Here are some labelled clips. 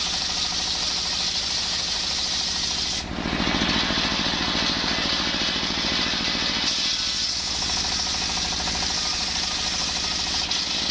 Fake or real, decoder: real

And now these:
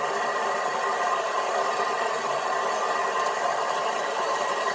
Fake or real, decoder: real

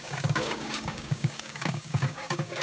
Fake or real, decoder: fake, codec, DAC